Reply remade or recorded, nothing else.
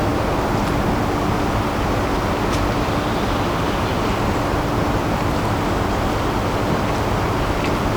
recorded